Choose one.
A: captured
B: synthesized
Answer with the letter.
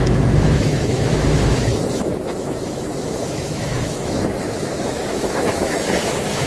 B